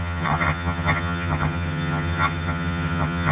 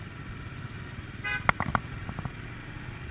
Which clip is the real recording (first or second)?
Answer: second